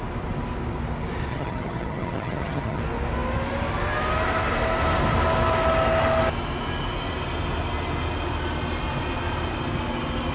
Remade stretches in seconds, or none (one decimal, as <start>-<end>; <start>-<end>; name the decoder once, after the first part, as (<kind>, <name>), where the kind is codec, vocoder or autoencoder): 1.3-2.8 (vocoder, HiFi-GAN)